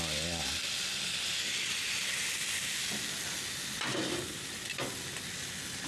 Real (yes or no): yes